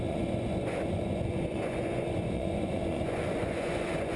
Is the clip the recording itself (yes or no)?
no